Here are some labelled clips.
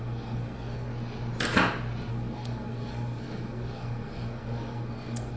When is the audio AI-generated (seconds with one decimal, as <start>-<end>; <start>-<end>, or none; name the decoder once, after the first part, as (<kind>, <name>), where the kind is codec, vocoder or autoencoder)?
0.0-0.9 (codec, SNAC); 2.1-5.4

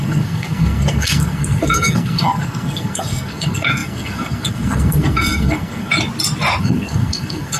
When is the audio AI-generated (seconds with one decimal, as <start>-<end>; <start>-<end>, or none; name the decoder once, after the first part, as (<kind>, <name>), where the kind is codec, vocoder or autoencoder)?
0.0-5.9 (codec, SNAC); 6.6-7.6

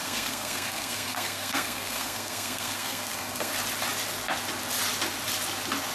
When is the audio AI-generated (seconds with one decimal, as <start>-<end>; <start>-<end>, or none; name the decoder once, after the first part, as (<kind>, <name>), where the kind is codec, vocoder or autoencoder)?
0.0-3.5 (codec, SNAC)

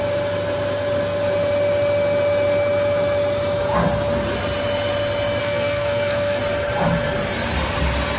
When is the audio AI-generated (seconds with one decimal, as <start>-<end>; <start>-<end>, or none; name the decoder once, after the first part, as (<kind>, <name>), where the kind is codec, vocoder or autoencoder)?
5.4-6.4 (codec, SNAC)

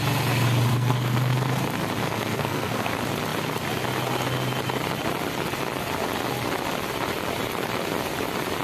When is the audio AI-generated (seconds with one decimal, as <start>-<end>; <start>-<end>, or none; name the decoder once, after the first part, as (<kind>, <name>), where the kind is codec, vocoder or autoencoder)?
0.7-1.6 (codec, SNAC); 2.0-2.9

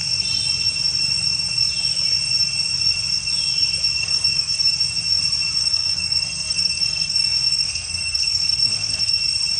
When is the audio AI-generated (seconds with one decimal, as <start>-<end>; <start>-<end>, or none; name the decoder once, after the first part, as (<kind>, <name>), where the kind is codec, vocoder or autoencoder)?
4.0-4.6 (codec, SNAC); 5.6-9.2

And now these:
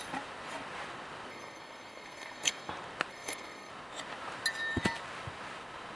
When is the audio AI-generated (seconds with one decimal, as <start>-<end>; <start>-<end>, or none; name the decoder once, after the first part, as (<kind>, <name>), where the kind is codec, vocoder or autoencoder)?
1.3-2.7 (codec, SNAC); 3.1-3.7

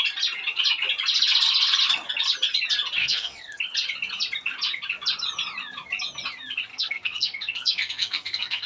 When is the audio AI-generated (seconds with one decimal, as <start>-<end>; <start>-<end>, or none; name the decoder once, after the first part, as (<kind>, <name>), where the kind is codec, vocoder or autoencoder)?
3.0-3.6 (codec, SNAC); 6.7-8.7